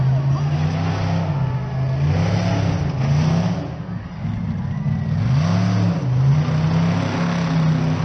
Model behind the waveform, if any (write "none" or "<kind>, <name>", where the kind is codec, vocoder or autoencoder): none